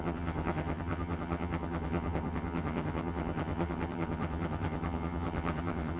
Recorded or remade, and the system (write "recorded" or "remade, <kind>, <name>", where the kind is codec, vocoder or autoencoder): remade, vocoder, HiFi-GAN